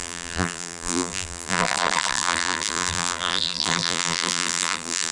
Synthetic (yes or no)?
yes